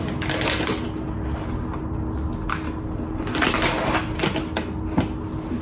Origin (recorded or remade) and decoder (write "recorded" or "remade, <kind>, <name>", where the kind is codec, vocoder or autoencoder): recorded